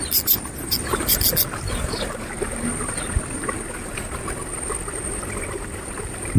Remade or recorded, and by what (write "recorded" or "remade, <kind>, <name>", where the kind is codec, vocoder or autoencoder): recorded